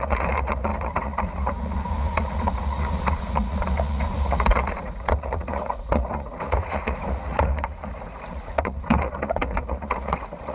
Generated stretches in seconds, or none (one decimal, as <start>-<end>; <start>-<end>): 0.0-10.5

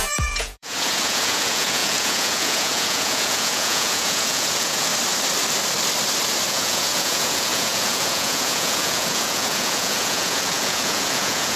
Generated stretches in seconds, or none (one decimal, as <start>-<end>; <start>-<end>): 0.0-4.9; 6.5-11.6

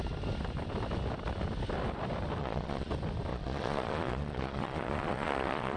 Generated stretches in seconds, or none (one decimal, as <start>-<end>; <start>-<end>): 2.4-2.9; 3.3-5.8

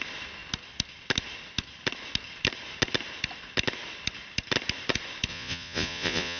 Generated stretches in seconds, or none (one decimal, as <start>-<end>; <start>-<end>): 5.3-6.4

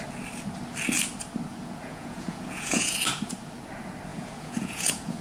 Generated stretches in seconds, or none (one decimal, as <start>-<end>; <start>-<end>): 1.5-3.1; 4.1-5.2

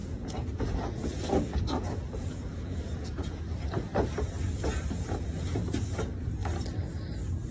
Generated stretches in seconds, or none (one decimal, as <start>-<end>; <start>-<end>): 0.0-3.9; 4.4-6.4

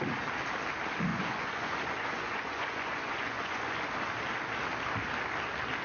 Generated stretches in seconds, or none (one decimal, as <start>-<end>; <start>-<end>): 1.1-3.9